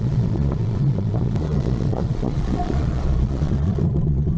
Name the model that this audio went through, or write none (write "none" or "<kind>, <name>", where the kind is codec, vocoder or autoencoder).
vocoder, Vocos